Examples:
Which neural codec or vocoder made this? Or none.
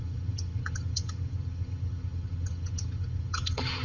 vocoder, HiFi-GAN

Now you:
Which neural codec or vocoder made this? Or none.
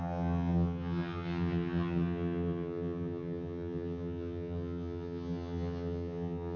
vocoder, HiFi-GAN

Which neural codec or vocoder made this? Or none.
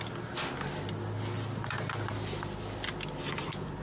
none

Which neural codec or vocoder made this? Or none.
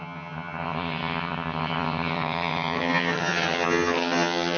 vocoder, HiFi-GAN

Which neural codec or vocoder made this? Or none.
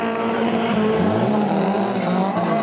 none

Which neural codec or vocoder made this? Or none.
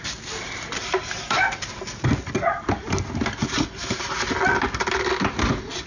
none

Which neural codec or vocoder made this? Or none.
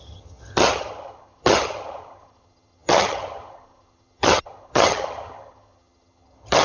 vocoder, HiFi-GAN